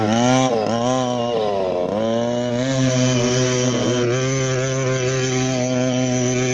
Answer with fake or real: real